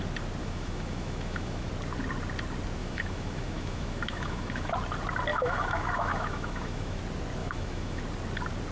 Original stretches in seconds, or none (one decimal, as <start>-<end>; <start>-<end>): 0.0-0.4; 1.7-2.8; 4.7-5.3; 7.0-7.4; 8.0-8.7